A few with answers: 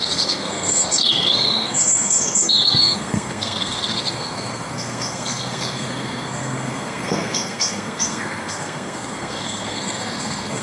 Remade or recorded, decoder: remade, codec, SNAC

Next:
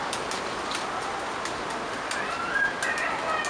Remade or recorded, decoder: recorded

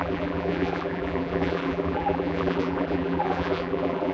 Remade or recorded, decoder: remade, vocoder, BigVGAN v2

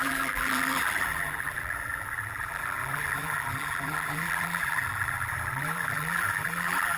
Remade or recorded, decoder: remade, vocoder, BigVGAN v2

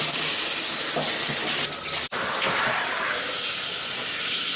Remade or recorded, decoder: recorded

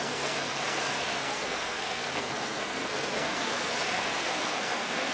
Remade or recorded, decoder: remade, codec, SNAC